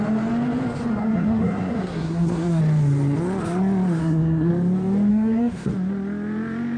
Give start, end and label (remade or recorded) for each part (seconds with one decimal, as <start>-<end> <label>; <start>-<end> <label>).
0.0-1.0 recorded; 1.0-2.6 remade; 2.6-4.0 recorded; 4.0-4.5 remade; 4.5-5.1 recorded; 5.1-5.7 remade; 5.7-6.8 recorded